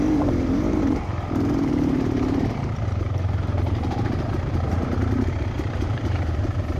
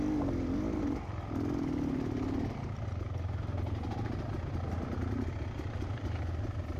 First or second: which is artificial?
first